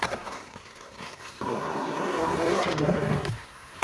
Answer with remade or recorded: remade